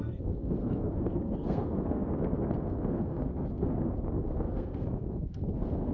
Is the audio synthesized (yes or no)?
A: yes